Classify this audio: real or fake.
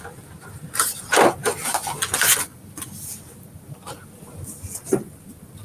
real